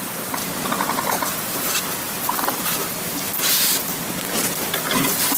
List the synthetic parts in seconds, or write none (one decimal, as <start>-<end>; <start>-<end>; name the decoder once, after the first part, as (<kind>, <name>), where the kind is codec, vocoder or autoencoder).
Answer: none